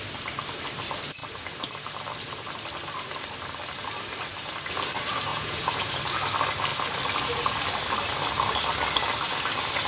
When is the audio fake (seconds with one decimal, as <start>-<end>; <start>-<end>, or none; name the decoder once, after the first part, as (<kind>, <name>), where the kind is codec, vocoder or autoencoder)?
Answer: 5.3-5.9 (vocoder, Vocos)